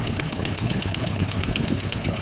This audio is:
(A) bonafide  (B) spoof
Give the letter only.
B